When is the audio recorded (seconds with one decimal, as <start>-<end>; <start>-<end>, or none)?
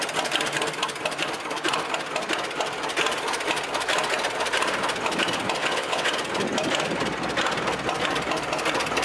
0.0-5.6; 6.1-9.0